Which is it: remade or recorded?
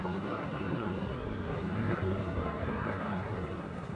remade